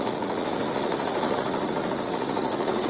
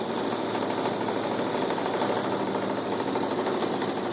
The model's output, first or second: first